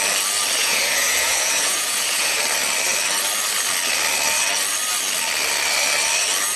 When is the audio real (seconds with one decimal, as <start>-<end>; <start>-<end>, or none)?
0.0-0.6; 2.4-6.6